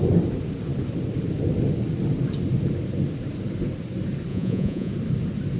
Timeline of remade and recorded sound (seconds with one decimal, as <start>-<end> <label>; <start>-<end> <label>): 0.0-4.3 recorded; 4.3-4.9 remade; 4.9-5.6 recorded